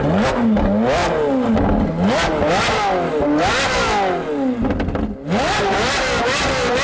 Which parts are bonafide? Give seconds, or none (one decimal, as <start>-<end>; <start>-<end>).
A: 0.0-6.8